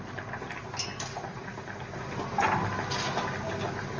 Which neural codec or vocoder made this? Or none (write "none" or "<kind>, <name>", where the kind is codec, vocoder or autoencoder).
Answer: none